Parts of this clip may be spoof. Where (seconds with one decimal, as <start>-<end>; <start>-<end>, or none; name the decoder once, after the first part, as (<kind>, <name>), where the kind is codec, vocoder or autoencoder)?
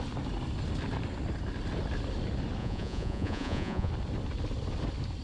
2.6-3.9 (vocoder, Vocos)